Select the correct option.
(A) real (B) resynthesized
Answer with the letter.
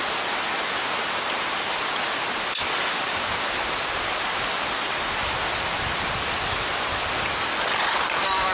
A